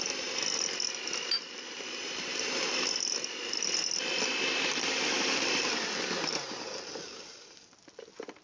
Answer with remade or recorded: recorded